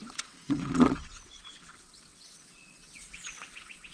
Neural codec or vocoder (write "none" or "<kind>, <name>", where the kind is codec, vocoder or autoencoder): vocoder, WaveNeXt